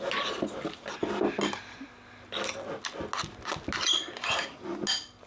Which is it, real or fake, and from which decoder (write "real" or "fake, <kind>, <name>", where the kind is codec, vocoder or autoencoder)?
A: real